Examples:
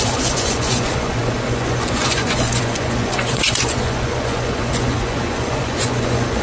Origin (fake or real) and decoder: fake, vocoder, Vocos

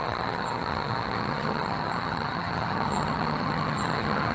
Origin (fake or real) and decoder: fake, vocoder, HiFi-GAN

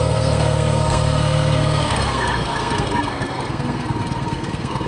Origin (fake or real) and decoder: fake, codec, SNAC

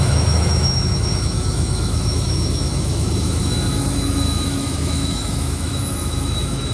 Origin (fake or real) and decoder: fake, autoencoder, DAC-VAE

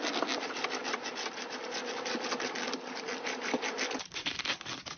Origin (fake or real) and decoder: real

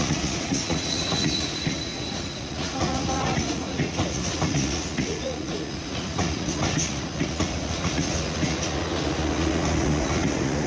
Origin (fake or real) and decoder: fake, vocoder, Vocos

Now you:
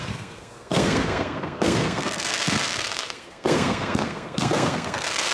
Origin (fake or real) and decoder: fake, codec, SNAC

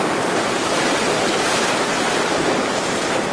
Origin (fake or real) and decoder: real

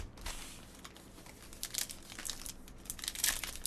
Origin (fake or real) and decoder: real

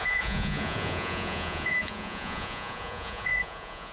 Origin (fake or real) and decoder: fake, vocoder, Vocos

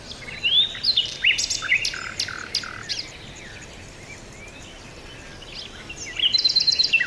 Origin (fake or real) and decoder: real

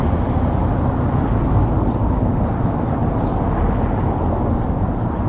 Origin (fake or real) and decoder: real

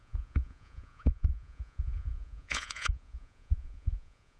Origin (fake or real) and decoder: fake, vocoder, Vocos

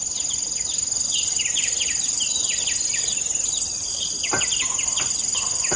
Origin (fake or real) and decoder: real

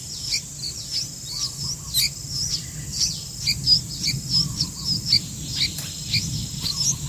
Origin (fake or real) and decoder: real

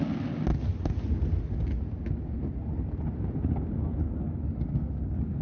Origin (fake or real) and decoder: real